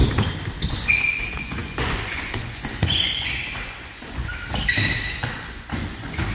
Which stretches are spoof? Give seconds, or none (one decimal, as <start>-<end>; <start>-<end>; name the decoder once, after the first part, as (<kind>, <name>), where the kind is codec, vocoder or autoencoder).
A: 0.7-4.3 (vocoder, Vocos); 5.1-6.3